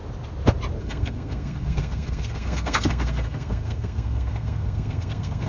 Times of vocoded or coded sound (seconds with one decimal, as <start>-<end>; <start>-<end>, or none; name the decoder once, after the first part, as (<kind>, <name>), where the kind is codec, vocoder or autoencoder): 0.8-5.5 (codec, SNAC)